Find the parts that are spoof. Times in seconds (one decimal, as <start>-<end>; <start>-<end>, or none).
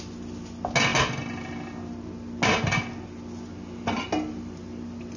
none